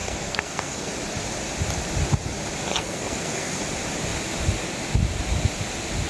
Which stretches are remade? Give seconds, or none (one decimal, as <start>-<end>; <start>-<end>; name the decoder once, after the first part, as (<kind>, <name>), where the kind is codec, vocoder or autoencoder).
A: 0.0-0.9 (codec, SNAC); 2.7-3.6